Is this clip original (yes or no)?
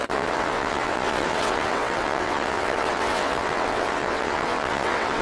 no